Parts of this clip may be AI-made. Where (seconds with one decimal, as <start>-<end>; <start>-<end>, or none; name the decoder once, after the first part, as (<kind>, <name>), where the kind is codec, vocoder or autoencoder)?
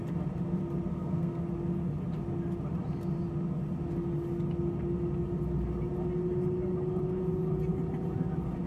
0.9-1.4 (codec, SNAC)